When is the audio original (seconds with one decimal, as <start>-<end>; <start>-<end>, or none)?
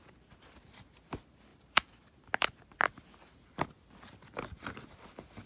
0.0-5.5